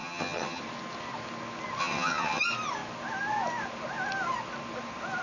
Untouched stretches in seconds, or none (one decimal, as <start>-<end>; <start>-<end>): 0.6-1.8; 2.4-5.2